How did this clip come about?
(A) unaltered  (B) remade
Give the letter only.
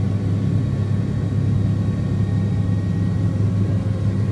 A